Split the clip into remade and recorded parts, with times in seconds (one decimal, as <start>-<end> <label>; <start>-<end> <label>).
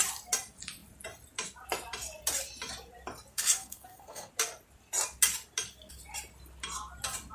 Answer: 0.0-3.3 recorded; 3.3-4.3 remade; 4.3-7.3 recorded